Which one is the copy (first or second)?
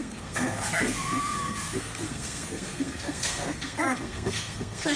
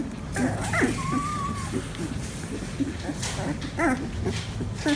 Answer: first